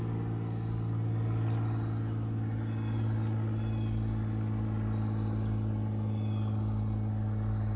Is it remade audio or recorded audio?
recorded